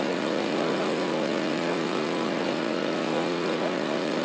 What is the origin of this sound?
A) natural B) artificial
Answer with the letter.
B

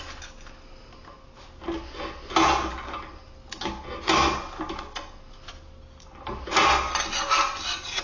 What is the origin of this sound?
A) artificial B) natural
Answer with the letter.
B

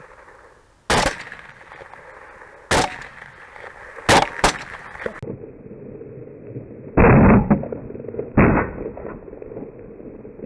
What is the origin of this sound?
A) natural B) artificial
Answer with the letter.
A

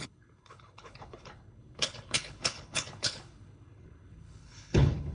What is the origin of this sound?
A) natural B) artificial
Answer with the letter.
B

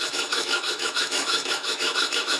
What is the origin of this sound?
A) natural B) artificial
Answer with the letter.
B